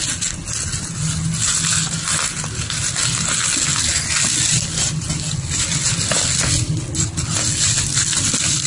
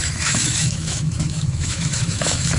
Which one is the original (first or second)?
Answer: first